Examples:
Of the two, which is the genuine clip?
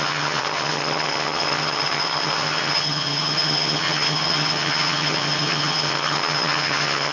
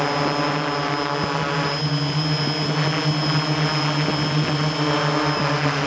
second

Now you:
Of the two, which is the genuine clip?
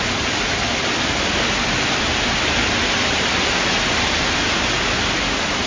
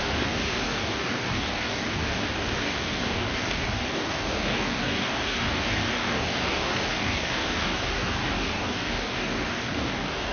first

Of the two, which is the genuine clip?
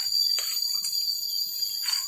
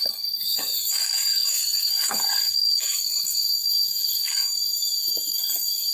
first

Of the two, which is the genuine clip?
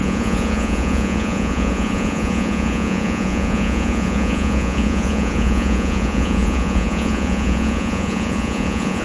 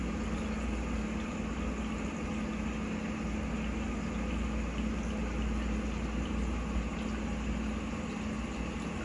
second